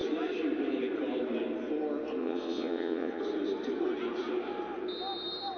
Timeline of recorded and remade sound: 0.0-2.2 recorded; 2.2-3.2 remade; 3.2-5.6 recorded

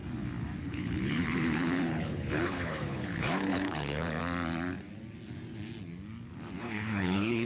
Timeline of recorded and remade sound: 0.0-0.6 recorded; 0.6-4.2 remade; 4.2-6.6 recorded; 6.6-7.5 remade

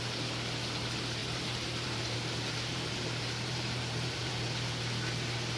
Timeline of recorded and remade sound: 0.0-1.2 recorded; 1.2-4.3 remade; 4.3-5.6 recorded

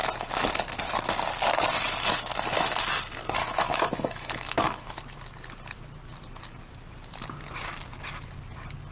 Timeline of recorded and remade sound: 0.0-3.4 recorded; 3.4-5.0 remade; 5.0-8.9 recorded

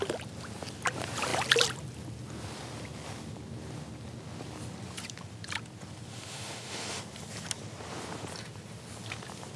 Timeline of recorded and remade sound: 0.0-6.1 recorded; 6.1-7.0 remade; 7.0-9.6 recorded

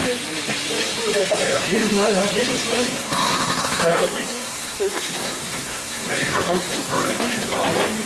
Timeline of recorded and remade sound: 0.0-1.2 recorded; 1.2-2.2 remade; 2.2-2.7 recorded; 2.7-7.6 remade; 7.6-8.1 recorded